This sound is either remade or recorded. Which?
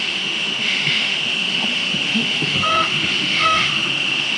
remade